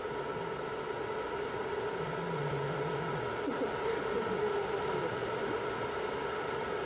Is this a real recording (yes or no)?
yes